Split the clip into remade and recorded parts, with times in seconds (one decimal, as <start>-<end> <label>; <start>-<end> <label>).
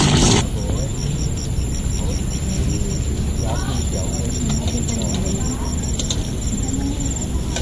0.0-7.6 recorded